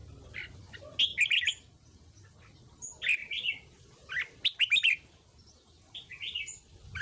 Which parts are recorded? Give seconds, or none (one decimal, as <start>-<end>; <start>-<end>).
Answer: 0.6-3.2